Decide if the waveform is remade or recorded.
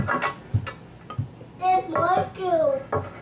recorded